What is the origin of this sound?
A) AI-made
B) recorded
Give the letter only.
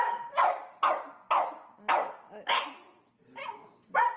B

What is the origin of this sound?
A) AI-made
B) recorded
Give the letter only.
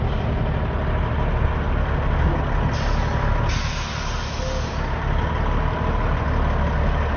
B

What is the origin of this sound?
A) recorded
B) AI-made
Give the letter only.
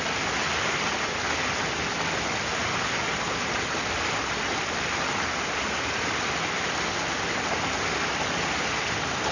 A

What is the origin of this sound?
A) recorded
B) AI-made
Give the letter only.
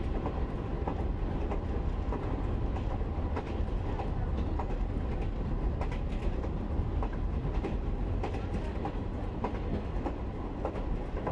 A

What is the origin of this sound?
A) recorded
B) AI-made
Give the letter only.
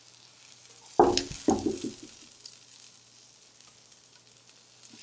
A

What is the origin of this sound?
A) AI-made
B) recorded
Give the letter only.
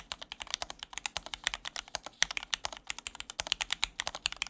B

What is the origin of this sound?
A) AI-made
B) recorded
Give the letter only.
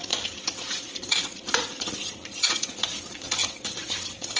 A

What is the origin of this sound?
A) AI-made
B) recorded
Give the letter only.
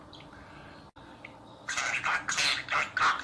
B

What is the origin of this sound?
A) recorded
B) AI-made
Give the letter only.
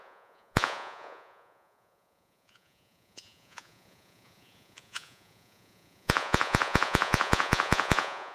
B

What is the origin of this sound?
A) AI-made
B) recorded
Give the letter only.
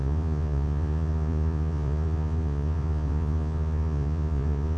A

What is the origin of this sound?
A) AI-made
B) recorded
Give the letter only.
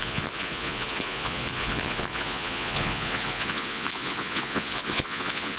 A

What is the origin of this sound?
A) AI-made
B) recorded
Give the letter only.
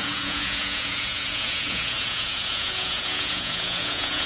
A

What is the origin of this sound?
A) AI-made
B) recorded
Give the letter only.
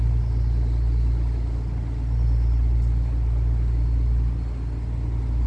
B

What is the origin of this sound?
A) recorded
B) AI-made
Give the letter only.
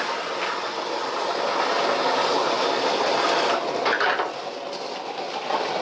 A